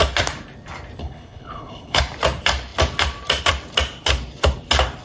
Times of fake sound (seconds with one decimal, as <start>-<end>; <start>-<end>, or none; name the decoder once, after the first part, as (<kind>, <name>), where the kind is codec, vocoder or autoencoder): 1.0-2.0 (codec, HILCodec)